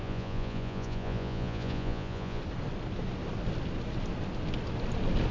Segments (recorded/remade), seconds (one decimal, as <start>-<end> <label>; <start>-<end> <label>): 0.0-2.4 remade; 2.4-5.3 recorded

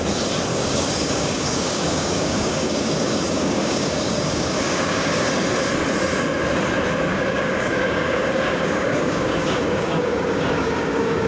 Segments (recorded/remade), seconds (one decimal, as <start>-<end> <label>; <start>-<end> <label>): 0.0-0.5 recorded; 0.5-5.3 remade; 5.3-7.1 recorded; 7.1-11.3 remade

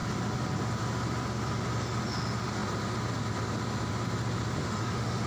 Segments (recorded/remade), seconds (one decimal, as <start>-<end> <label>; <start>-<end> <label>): 0.0-4.6 recorded; 4.6-5.3 remade

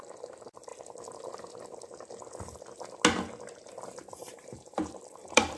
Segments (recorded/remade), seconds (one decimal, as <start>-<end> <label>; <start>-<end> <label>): 0.0-0.7 remade; 0.7-4.1 recorded; 4.1-5.6 remade

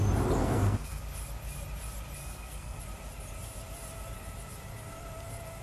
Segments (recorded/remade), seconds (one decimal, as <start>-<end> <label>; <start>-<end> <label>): 0.0-0.4 recorded; 0.4-1.0 remade; 1.0-2.2 recorded; 2.2-2.8 remade; 2.8-5.6 recorded

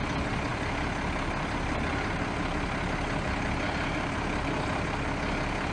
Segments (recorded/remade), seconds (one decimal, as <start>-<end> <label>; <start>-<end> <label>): 0.0-5.7 recorded

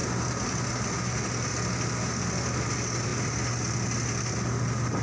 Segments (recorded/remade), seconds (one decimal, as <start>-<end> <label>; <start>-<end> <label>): 0.0-5.0 recorded

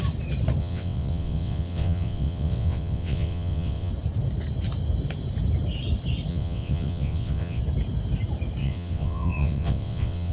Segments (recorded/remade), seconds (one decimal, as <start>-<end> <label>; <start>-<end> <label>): 0.0-0.6 recorded; 0.6-3.9 remade; 3.9-6.3 recorded; 6.3-7.6 remade; 7.6-8.6 recorded; 8.6-10.3 remade